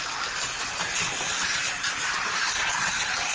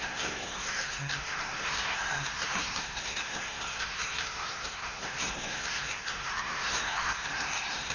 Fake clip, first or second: second